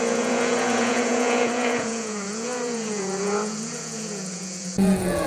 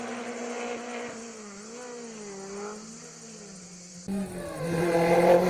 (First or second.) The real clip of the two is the second